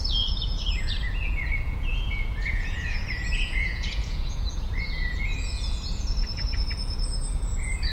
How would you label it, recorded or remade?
remade